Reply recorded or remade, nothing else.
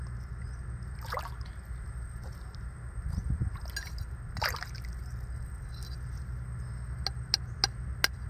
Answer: recorded